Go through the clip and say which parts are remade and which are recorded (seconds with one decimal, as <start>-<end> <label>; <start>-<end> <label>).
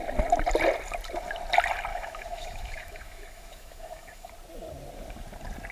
0.0-1.9 recorded; 1.9-4.3 remade; 4.3-5.7 recorded